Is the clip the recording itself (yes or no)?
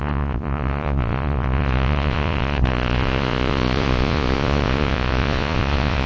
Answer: no